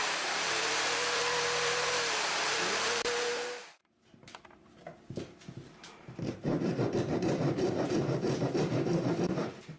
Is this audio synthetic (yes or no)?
yes